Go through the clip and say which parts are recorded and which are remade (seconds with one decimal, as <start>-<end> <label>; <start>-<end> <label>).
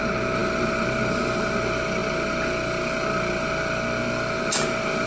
0.0-5.1 recorded